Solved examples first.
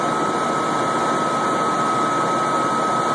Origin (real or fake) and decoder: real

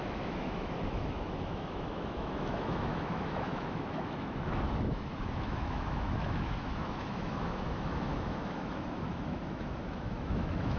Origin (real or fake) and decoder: fake, autoencoder, DAC-VAE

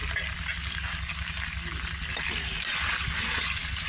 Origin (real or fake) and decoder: real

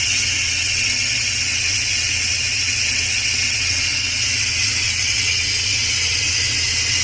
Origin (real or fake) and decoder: fake, vocoder, WaveNeXt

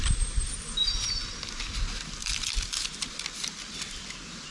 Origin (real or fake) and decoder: real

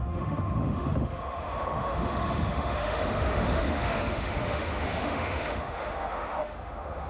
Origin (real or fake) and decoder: fake, autoencoder, DAC-VAE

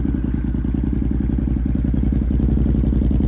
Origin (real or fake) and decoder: real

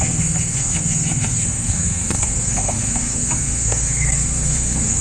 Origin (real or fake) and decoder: fake, codec, SNAC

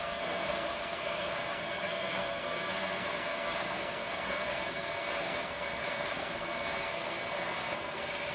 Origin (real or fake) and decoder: fake, codec, SNAC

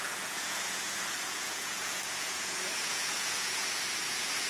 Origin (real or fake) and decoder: fake, vocoder, Vocos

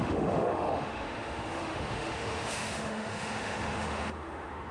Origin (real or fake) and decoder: fake, autoencoder, DAC-VAE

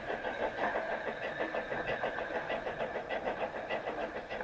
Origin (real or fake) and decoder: real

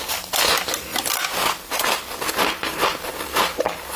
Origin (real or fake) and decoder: real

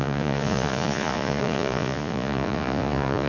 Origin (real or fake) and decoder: fake, vocoder, Vocos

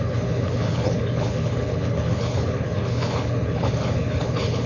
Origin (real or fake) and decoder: fake, codec, HILCodec